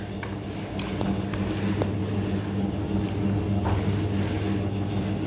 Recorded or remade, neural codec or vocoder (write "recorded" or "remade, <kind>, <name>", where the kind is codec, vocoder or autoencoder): recorded